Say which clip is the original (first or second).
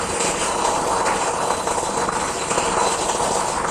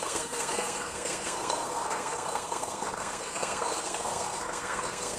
first